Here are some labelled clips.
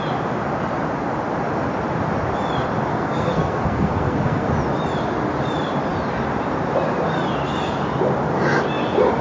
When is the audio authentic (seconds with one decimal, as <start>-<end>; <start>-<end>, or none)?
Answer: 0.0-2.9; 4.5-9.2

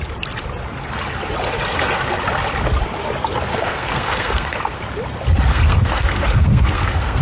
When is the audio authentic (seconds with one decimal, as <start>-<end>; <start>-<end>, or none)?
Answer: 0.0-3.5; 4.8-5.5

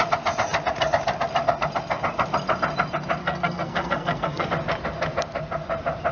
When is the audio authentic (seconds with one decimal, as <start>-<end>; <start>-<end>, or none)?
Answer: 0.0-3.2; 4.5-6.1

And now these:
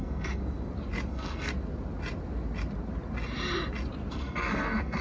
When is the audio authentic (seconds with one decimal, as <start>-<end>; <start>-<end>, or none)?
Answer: 0.4-1.1; 1.5-4.1

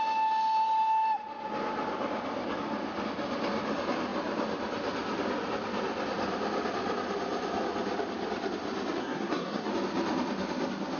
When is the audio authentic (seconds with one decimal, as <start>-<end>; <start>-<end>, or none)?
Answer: 0.0-9.0; 9.7-11.0

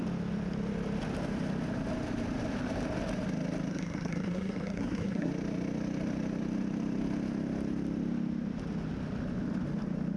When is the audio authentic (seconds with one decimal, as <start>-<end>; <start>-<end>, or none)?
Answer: 0.0-3.7; 5.3-10.2

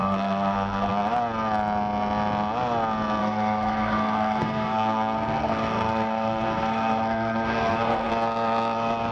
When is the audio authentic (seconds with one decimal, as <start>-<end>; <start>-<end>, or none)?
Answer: 0.9-3.2; 8.1-9.1

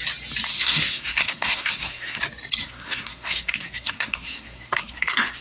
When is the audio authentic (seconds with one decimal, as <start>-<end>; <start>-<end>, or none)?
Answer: 0.0-0.5; 2.2-2.6